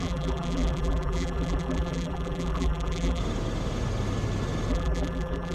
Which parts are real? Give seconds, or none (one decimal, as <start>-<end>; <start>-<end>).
3.2-4.7